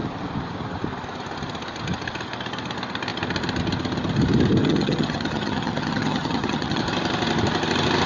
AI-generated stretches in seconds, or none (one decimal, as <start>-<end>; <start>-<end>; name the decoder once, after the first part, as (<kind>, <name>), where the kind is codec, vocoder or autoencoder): 4.6-6.8 (vocoder, HiFi-GAN)